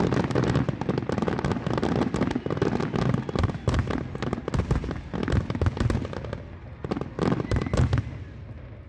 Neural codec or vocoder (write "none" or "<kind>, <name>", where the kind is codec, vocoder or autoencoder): none